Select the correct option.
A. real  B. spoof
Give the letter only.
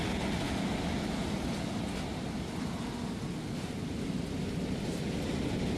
A